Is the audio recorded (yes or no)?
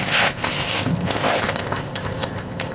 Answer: no